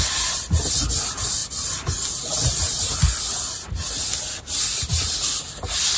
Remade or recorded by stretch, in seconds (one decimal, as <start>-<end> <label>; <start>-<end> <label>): 0.0-6.0 recorded